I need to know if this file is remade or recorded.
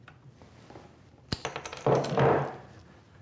recorded